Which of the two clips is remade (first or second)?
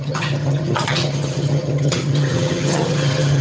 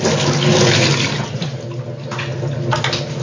first